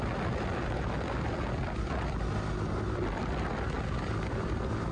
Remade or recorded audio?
recorded